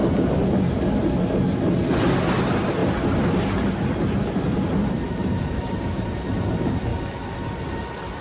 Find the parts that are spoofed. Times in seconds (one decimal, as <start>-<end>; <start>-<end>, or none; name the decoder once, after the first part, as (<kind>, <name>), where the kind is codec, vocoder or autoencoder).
4.5-6.2 (vocoder, BigVGAN v2)